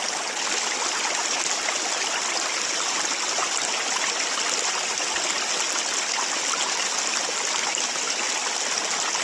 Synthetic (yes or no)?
no